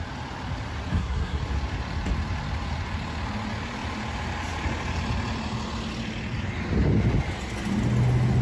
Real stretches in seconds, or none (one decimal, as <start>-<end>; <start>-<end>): 0.0-0.9; 1.4-8.4